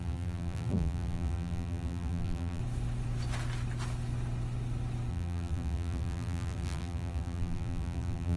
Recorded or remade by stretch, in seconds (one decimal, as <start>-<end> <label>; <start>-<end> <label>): 0.0-2.6 remade; 2.6-5.1 recorded; 5.1-8.4 remade